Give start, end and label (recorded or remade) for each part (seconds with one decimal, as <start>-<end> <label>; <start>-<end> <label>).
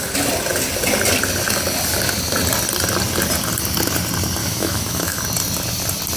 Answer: 0.0-4.4 recorded; 4.4-5.2 remade; 5.2-6.2 recorded